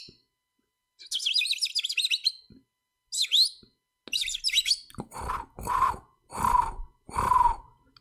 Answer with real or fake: real